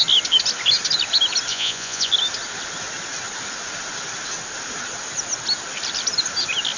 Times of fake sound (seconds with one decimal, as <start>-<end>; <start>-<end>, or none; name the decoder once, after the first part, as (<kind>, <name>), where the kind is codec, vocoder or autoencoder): 1.5-2.1 (vocoder, Vocos)